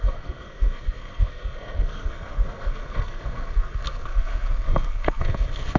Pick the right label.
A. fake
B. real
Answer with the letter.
A